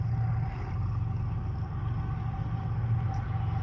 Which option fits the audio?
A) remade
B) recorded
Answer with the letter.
B